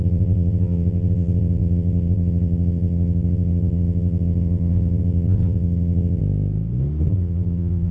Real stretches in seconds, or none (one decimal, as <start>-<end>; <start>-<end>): 6.2-7.1